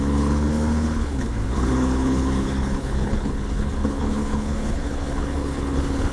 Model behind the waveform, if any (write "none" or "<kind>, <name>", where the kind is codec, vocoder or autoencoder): codec, HILCodec